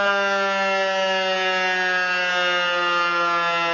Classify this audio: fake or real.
real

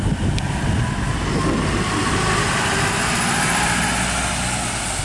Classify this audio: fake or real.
real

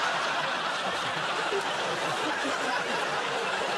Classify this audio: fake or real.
real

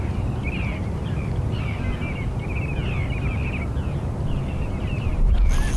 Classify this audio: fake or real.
real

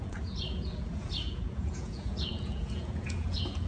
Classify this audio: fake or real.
fake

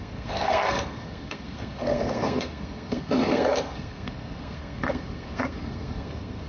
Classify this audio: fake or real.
fake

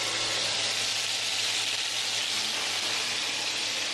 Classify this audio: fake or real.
real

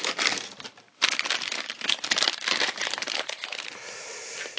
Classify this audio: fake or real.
real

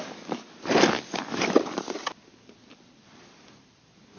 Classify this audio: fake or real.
real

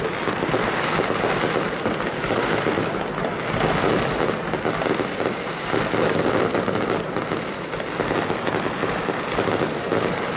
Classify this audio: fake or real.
real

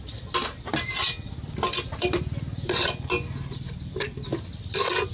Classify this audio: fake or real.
real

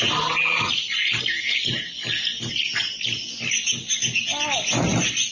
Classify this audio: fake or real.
real